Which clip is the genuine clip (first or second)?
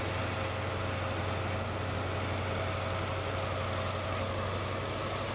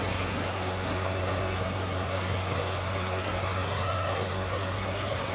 first